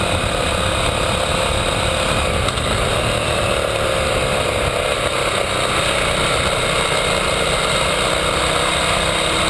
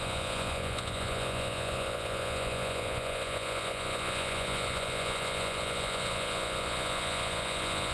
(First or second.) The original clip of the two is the first